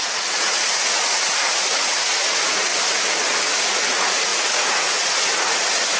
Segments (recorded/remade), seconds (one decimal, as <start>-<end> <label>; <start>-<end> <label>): 0.0-2.7 remade; 2.7-3.4 recorded; 3.4-6.0 remade